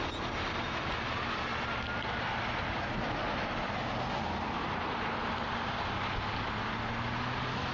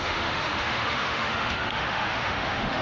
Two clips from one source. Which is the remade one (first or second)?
second